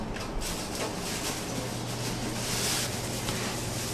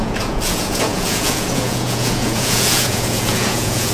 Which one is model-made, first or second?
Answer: second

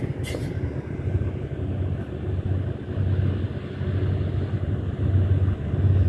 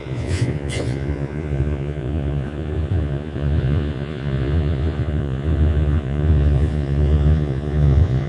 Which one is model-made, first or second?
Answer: second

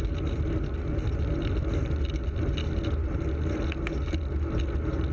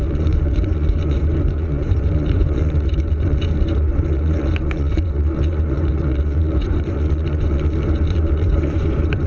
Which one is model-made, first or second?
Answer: second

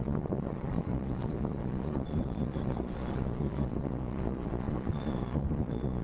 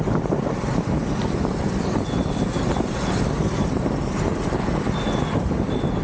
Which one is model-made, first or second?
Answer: first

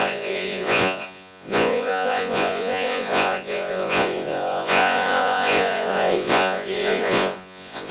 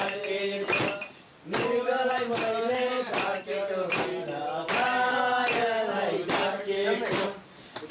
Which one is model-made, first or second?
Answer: first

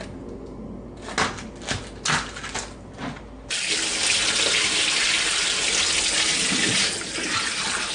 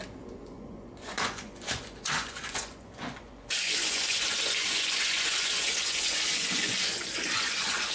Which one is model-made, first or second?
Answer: second